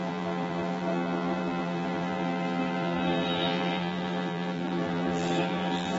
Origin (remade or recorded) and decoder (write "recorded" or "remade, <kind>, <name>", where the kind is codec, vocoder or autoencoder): remade, vocoder, BigVGAN v2